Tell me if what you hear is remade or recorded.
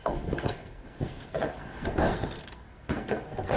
remade